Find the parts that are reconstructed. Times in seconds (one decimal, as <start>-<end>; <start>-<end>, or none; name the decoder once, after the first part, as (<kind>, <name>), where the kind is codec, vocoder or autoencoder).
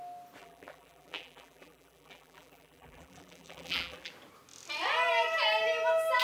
0.4-4.1 (vocoder, BigVGAN v2)